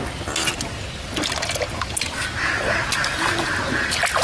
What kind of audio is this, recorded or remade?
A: recorded